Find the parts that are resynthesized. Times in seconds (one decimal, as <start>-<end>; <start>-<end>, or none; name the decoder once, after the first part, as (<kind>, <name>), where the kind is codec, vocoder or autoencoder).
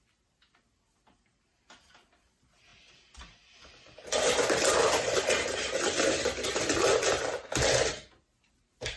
none